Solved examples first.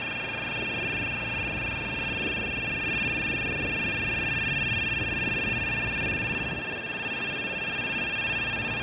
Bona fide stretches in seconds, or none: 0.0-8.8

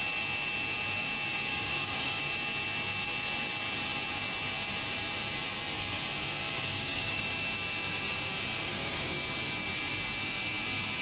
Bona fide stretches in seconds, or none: 0.0-1.5; 2.2-6.7; 7.2-8.7; 9.2-11.0

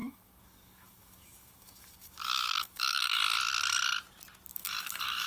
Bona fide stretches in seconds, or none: 3.2-4.5

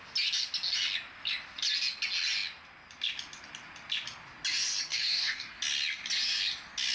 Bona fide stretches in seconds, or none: 0.0-4.9; 5.6-6.9

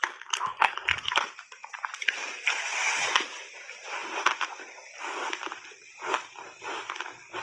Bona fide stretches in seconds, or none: 0.0-7.4